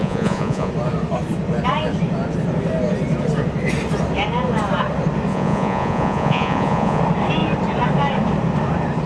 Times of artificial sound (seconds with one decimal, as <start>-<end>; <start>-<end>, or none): 0.0-0.7; 5.3-7.0